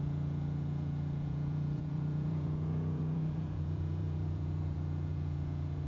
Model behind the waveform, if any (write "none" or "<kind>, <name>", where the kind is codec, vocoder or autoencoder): vocoder, Vocos